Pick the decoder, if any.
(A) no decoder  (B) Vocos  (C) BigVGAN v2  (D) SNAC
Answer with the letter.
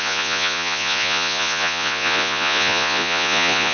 B